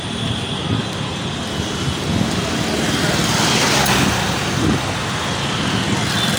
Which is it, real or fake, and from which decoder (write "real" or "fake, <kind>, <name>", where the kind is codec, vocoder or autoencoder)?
real